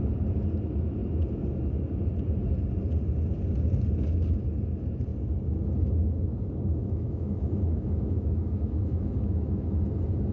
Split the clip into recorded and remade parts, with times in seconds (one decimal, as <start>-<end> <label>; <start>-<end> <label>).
0.0-6.7 recorded; 6.7-9.8 remade; 9.8-10.3 recorded